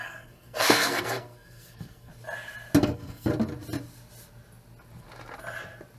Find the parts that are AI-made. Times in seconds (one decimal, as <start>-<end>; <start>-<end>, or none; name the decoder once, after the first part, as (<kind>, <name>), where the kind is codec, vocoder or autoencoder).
0.0-2.1 (codec, SNAC); 2.8-3.3